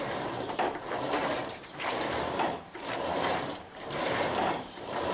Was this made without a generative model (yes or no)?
no